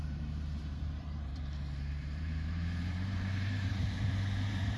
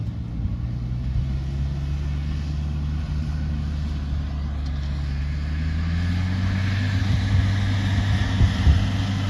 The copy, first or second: first